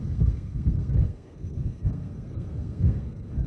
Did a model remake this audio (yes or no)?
yes